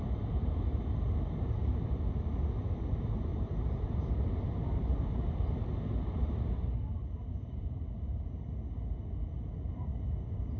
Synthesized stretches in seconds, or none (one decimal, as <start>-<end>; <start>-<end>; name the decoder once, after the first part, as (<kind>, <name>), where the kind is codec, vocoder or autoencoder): 3.3-8.5 (vocoder, BigVGAN v2)